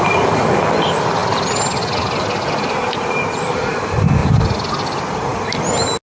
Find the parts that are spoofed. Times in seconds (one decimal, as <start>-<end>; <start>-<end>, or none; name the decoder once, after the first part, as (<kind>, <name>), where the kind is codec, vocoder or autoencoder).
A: none